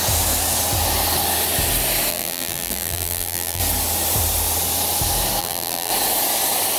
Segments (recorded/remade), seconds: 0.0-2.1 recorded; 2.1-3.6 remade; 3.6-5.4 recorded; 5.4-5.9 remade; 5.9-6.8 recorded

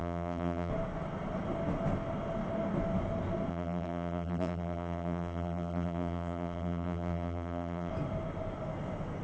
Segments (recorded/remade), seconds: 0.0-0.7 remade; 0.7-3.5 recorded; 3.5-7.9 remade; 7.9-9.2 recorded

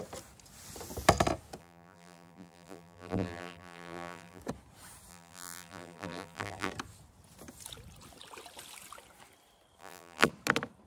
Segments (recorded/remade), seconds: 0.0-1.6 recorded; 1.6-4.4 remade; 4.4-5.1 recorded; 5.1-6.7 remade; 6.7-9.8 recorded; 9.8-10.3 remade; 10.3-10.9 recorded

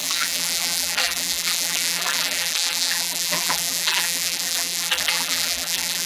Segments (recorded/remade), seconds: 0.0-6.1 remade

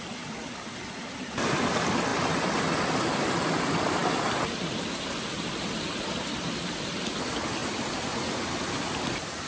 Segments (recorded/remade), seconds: 0.0-9.5 recorded